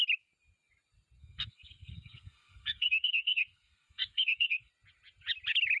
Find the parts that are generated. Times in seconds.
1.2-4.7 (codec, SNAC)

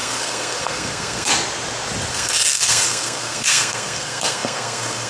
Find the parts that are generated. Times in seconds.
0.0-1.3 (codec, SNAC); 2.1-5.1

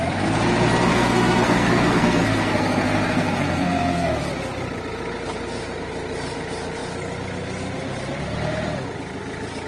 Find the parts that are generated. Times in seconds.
0.9-4.1 (codec, SNAC)